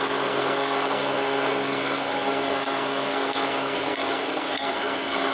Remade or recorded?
remade